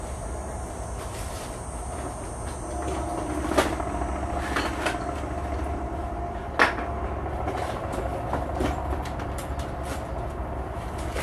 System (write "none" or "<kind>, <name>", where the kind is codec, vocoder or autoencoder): none